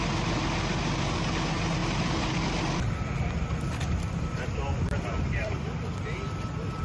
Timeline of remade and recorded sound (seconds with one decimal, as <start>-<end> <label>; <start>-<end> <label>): 0.0-1.8 recorded; 1.8-5.9 remade; 5.9-6.8 recorded